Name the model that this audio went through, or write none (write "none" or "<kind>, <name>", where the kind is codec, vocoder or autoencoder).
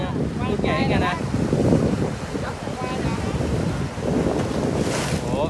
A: none